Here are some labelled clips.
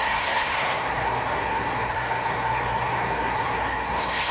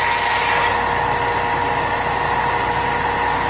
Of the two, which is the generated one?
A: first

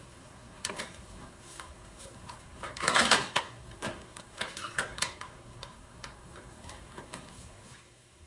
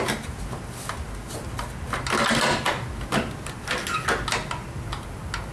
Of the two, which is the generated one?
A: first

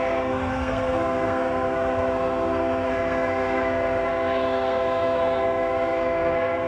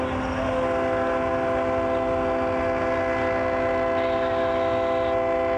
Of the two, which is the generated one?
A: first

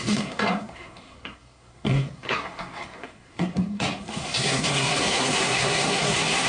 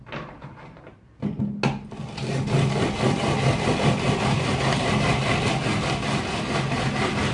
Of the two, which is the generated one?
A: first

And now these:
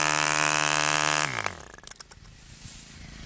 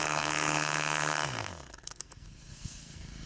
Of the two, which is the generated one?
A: second